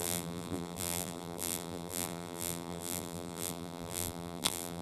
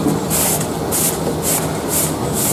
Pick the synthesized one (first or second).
first